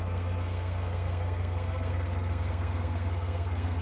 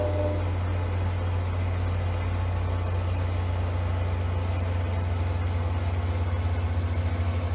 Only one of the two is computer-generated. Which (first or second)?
first